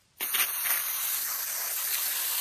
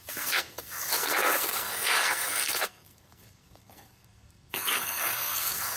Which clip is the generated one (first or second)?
second